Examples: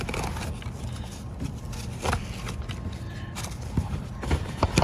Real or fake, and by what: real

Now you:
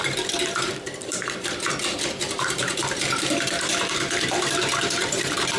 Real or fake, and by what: fake, vocoder, BigVGAN v2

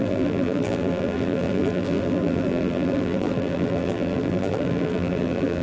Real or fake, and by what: fake, vocoder, BigVGAN v2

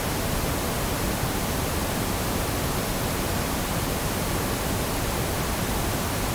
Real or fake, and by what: real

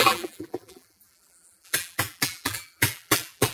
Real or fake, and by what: fake, vocoder, BigVGAN v2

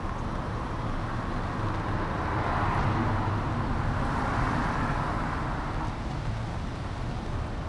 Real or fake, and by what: real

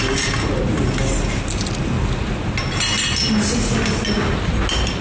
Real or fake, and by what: real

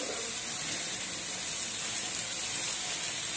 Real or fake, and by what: real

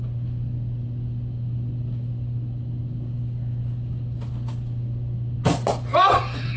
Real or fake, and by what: real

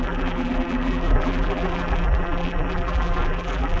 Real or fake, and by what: fake, vocoder, BigVGAN v2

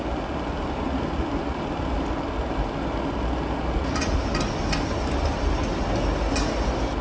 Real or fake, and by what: real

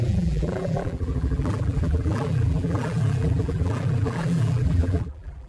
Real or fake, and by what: fake, vocoder, BigVGAN v2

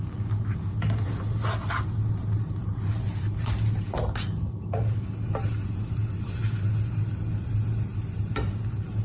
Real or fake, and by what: real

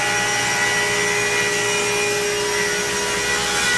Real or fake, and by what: real